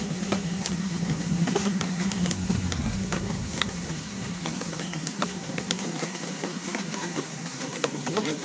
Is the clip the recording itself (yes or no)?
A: no